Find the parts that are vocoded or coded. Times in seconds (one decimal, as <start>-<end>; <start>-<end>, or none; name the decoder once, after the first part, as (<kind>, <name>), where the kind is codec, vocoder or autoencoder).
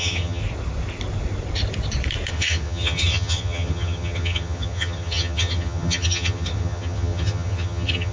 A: 0.0-0.4 (vocoder, HiFi-GAN); 2.3-8.1